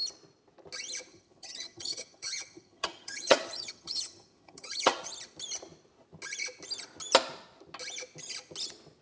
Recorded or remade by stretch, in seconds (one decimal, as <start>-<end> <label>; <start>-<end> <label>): 0.0-1.1 recorded; 1.1-5.1 remade; 5.1-9.0 recorded